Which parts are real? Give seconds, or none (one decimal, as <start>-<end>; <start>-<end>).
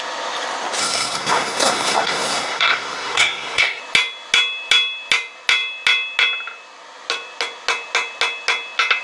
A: 0.0-0.8; 3.8-9.0